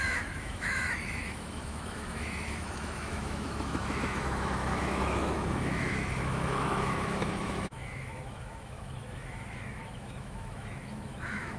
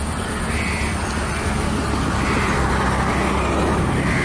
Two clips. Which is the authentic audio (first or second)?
second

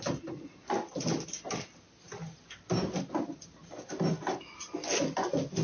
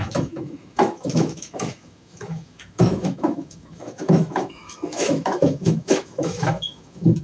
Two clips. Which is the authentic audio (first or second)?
first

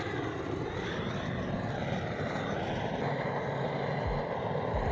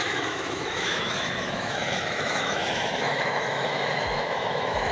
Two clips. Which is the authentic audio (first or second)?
first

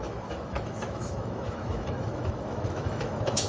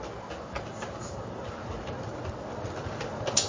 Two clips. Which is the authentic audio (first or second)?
second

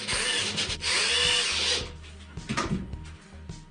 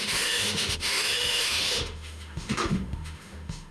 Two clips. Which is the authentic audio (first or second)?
first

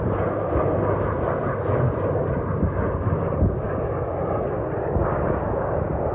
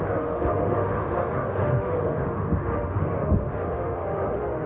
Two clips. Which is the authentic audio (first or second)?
first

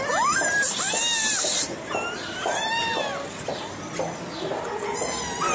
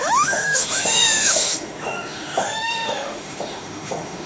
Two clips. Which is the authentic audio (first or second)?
first